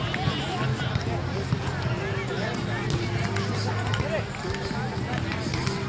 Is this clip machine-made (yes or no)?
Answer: no